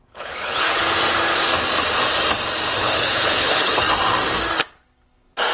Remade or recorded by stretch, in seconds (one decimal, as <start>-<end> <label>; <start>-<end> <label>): 0.0-0.8 remade; 0.8-2.8 recorded; 2.8-3.8 remade; 3.8-5.5 recorded

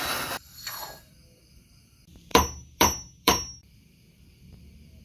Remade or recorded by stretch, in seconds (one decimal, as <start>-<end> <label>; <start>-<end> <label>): 0.0-0.4 recorded; 0.4-1.1 remade; 1.1-2.3 recorded; 2.3-5.0 remade

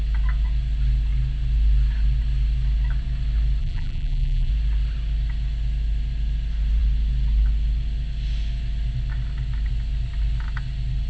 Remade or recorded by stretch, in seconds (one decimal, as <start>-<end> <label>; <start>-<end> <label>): 0.0-3.6 recorded; 3.6-4.5 remade; 4.5-11.1 recorded

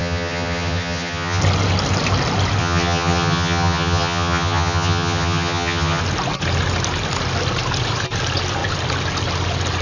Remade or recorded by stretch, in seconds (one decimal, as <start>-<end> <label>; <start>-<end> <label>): 0.0-1.4 remade; 1.4-2.6 recorded; 2.6-6.0 remade; 6.0-9.8 recorded

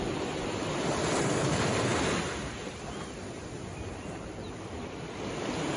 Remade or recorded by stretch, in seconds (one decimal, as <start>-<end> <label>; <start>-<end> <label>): 0.0-5.8 recorded

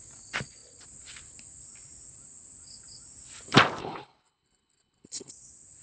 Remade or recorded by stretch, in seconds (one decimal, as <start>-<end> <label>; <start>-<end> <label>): 0.0-3.8 recorded; 3.8-5.3 remade; 5.3-5.8 recorded